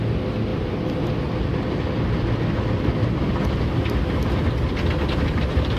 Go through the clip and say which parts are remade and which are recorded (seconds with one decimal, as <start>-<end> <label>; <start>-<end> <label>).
0.0-5.8 recorded